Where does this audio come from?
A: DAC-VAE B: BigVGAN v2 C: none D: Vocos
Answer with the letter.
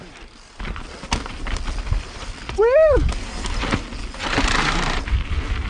C